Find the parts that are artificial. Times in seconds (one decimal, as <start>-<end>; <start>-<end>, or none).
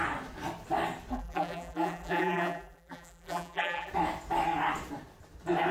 1.1-3.9